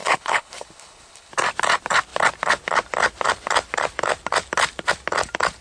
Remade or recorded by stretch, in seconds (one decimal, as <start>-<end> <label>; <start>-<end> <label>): 0.0-1.3 remade; 1.3-5.6 recorded